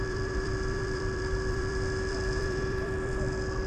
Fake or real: fake